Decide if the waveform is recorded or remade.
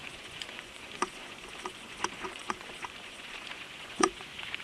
remade